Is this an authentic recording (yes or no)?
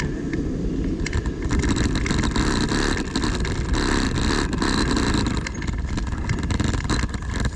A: yes